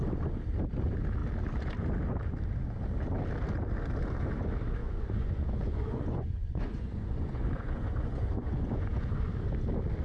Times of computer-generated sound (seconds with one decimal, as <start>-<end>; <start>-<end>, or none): 4.8-9.3